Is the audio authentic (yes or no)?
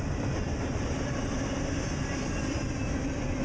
yes